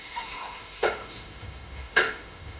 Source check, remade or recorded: remade